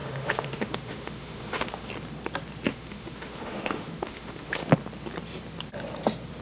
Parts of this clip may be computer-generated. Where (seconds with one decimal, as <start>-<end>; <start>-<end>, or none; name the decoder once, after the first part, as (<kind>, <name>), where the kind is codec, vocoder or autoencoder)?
0.0-1.9 (autoencoder, DAC-VAE); 2.7-4.7